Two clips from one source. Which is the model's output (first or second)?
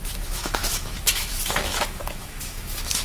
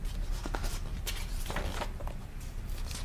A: first